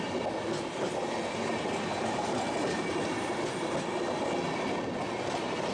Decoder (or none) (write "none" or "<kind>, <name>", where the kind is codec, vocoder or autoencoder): none